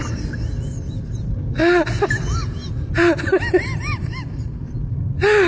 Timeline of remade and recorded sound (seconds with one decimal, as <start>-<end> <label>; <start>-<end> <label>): 0.0-5.5 recorded